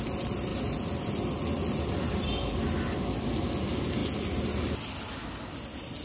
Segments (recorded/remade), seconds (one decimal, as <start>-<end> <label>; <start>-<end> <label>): 0.0-6.0 recorded